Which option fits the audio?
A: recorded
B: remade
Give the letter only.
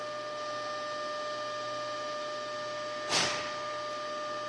A